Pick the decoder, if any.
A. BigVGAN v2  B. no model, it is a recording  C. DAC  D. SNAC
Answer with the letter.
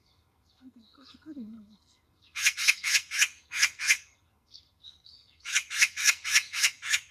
D